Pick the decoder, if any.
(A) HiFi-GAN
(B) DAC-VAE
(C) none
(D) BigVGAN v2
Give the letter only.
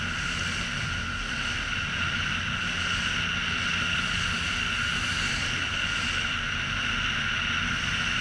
C